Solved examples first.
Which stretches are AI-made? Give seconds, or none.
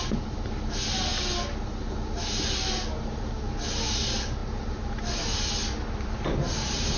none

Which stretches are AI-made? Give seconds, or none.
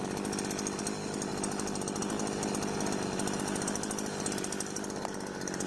none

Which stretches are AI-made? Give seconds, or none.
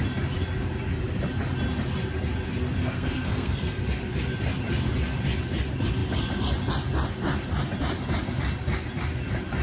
2.8-3.8 (codec, SNAC)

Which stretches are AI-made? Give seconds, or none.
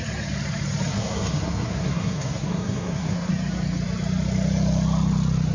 0.9-3.3 (codec, SNAC)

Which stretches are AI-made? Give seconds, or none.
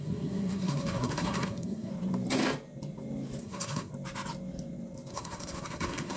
0.0-1.9 (codec, SNAC); 3.4-3.9; 5.1-6.2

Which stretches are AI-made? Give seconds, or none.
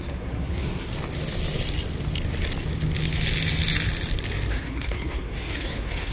0.0-0.9 (codec, SNAC); 4.5-6.1